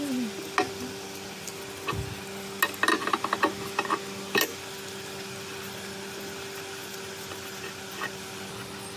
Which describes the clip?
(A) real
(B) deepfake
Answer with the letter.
A